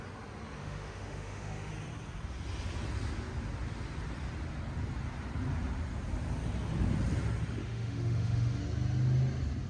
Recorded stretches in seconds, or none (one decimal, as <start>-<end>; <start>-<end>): 0.0-0.6; 1.7-7.6; 8.6-9.7